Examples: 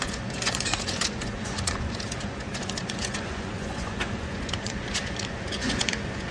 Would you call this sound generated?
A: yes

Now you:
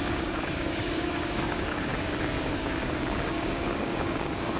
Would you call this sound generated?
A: yes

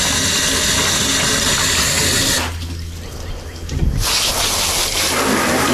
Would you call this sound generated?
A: no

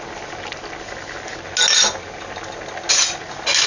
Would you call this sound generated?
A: no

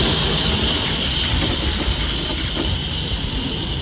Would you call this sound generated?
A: yes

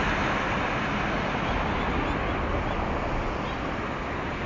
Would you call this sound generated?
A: no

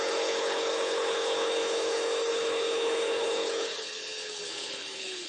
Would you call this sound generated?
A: yes